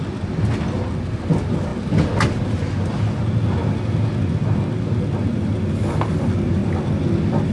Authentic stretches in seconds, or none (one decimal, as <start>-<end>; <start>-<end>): 0.0-7.5